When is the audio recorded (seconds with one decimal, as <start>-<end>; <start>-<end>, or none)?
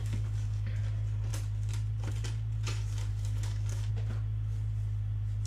0.8-3.1; 3.9-5.5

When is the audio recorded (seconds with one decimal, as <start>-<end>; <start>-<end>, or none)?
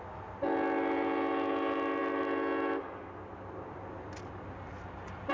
0.0-5.3